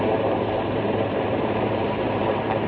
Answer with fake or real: fake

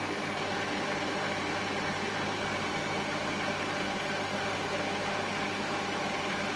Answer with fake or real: real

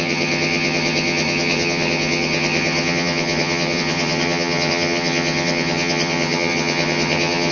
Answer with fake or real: fake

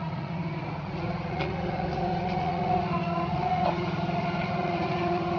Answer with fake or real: fake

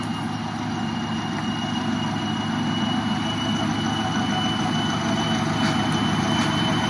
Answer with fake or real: real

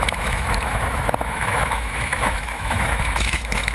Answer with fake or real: fake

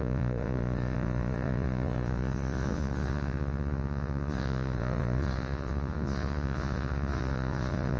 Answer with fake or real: fake